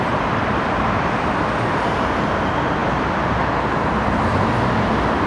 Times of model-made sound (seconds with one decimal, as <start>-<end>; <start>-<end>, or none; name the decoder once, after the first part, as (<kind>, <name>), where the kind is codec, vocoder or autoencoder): 0.0-5.3 (vocoder, BigVGAN v2)